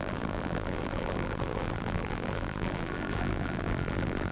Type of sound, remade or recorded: remade